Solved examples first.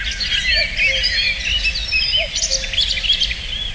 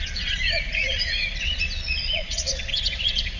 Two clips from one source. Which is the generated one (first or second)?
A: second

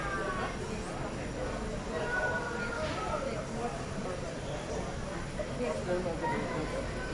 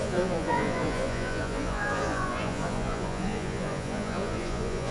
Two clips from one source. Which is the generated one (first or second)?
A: second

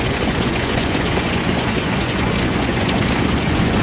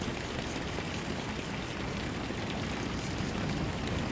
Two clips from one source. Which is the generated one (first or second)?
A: first